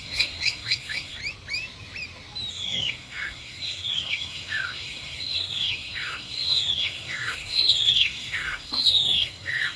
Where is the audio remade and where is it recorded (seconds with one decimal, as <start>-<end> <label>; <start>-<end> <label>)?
0.0-1.2 remade; 1.2-2.5 recorded; 2.5-9.8 remade